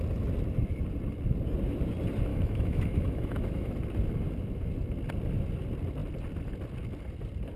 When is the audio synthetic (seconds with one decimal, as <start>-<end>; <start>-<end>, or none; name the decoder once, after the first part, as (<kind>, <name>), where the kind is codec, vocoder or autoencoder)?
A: 2.3-3.7 (autoencoder, DAC-VAE)